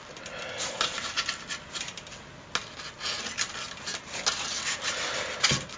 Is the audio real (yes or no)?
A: yes